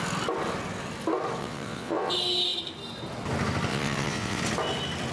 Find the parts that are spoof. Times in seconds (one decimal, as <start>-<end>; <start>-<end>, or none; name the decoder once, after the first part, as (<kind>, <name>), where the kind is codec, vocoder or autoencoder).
1.4-2.1 (vocoder, WaveNeXt); 3.7-4.4